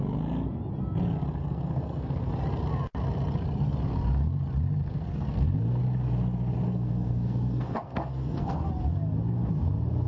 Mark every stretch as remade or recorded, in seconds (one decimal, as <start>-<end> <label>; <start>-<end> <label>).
0.0-1.4 recorded; 1.4-2.3 remade; 2.3-4.9 recorded; 4.9-5.8 remade; 5.8-6.7 recorded; 6.7-8.7 remade; 8.7-10.1 recorded